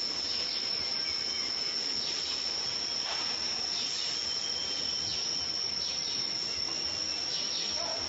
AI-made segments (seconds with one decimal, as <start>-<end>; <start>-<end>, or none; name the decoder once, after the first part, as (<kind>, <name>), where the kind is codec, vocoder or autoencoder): none